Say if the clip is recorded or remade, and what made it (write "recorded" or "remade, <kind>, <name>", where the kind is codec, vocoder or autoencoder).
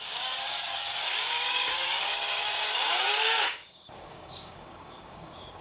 remade, codec, DAC